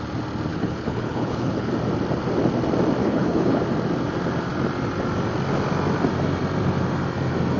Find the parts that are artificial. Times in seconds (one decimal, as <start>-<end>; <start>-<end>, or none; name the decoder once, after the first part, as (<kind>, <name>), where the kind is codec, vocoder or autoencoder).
0.5-1.7 (codec, HILCodec); 3.0-3.6